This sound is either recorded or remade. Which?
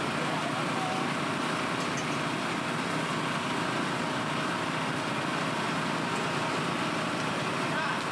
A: recorded